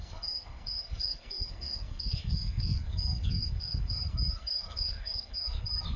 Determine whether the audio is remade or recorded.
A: remade